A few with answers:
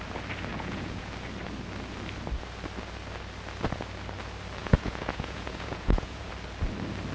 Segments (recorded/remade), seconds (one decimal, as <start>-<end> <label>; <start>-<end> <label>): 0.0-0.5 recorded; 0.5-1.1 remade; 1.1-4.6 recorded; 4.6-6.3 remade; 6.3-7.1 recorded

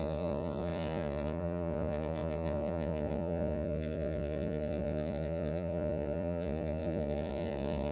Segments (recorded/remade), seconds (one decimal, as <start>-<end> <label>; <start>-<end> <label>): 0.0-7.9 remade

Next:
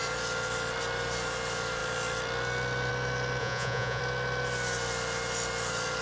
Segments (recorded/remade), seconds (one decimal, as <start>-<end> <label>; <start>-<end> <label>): 0.0-3.4 recorded; 3.4-4.0 remade; 4.0-6.0 recorded

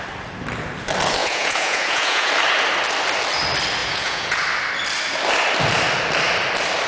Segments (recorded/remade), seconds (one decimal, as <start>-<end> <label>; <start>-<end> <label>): 0.0-1.2 recorded; 1.2-2.3 remade; 2.3-3.8 recorded; 3.8-4.4 remade; 4.4-6.9 recorded

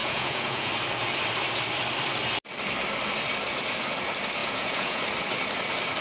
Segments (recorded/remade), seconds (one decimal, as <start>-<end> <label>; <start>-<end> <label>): 0.0-0.7 remade; 0.7-4.4 recorded; 4.4-5.0 remade; 5.0-6.0 recorded

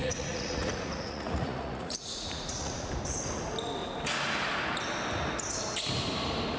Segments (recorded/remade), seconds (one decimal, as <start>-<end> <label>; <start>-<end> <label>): 0.0-2.9 remade; 2.9-6.6 recorded